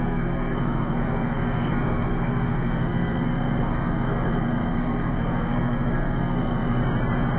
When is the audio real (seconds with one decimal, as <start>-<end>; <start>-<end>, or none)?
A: 6.8-7.4